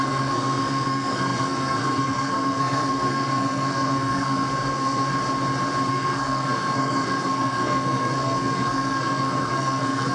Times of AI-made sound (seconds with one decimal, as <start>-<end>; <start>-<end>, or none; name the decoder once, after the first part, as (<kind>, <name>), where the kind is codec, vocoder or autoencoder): 0.0-5.1 (codec, SNAC); 5.9-10.1